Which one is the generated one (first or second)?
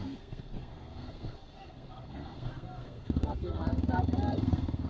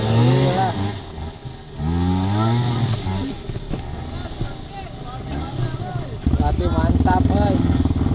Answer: first